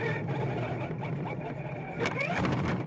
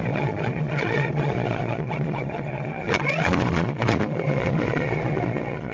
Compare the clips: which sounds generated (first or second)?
second